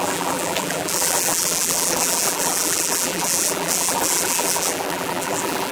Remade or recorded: remade